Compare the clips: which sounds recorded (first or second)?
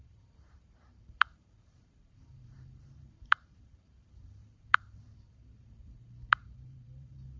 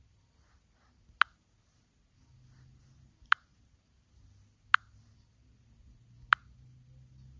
second